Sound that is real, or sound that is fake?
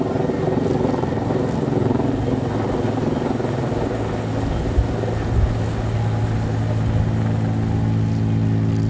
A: real